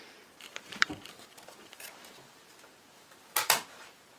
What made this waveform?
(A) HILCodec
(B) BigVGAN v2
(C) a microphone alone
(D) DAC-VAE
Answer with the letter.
B